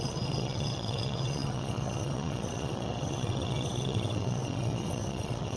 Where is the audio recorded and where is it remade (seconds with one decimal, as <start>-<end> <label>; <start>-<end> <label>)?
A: 0.0-5.6 remade